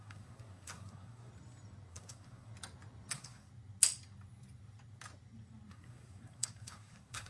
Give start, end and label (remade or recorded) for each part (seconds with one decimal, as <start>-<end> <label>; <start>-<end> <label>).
0.0-1.3 remade; 1.3-1.9 recorded; 1.9-2.5 remade; 2.5-3.1 recorded; 3.1-3.5 remade; 3.5-5.7 recorded; 5.7-7.3 remade

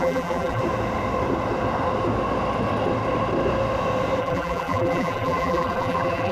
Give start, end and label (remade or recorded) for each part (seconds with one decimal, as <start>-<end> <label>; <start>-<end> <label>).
0.0-0.6 remade; 0.6-4.2 recorded; 4.2-6.3 remade

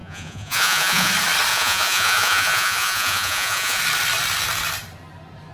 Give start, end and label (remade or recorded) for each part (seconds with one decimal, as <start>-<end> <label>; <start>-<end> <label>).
0.0-1.1 remade; 1.1-1.5 recorded; 1.5-3.8 remade; 3.8-5.5 recorded

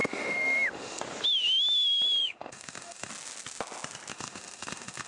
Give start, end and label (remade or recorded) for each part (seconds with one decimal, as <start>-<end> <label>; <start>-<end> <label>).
0.0-1.0 remade; 1.0-2.2 recorded; 2.2-3.1 remade; 3.1-4.1 recorded; 4.1-5.1 remade

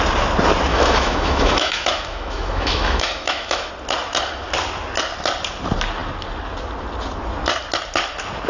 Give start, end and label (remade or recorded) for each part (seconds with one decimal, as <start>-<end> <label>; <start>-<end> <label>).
0.0-0.7 recorded; 0.7-3.7 remade; 3.7-8.5 recorded

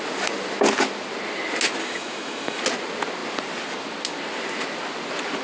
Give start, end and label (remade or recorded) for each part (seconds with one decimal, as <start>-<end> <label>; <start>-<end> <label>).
0.0-1.8 recorded; 1.8-2.6 remade; 2.6-5.4 recorded

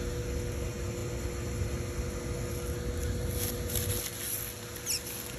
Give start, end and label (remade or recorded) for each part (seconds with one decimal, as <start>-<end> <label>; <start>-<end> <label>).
0.0-5.4 recorded